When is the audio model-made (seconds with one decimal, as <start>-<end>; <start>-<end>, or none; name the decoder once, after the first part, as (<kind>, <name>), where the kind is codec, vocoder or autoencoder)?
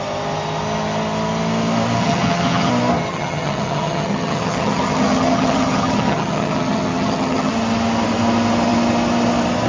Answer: 2.0-2.7 (vocoder, HiFi-GAN); 3.1-7.5